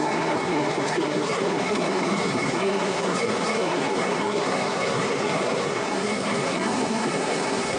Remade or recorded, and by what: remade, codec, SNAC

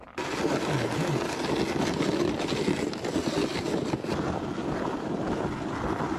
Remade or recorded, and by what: recorded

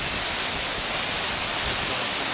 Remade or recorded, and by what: recorded